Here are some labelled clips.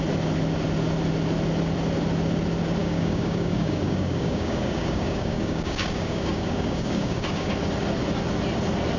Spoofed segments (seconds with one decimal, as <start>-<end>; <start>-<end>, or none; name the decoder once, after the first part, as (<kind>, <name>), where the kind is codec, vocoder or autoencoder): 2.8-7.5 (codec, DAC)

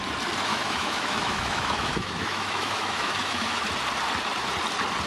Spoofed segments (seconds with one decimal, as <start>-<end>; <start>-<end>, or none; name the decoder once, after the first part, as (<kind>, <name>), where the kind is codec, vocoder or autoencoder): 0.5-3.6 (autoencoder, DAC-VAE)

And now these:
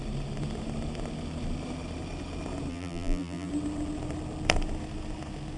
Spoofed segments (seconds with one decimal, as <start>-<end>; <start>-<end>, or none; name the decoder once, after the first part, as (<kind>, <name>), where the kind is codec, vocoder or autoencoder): 2.7-3.5 (vocoder, BigVGAN v2)